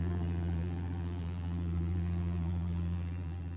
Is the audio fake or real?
fake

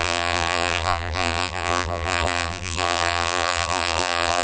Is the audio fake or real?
fake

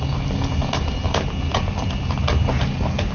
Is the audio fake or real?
real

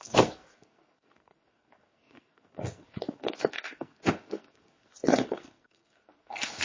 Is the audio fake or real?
fake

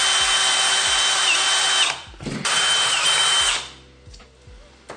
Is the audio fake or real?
real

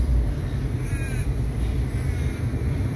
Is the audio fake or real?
fake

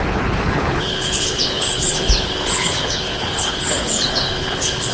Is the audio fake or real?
fake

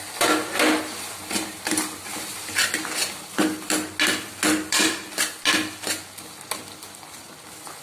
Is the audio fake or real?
real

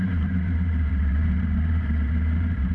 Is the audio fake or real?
fake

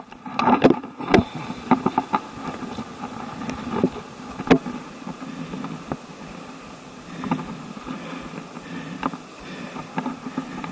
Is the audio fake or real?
real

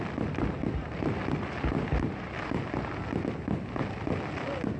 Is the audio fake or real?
real